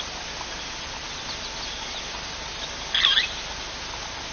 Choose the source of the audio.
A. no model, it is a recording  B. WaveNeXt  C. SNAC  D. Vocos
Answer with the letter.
A